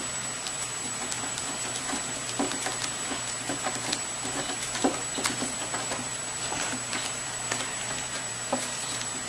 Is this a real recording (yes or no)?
no